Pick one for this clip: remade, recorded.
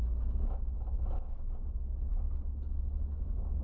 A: recorded